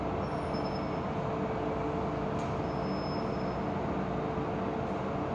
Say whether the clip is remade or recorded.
recorded